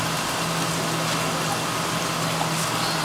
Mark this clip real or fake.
real